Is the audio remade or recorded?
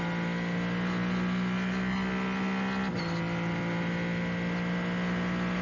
recorded